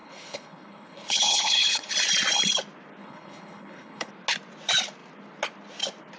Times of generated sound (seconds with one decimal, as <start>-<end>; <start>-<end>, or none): 0.0-1.9; 3.0-4.1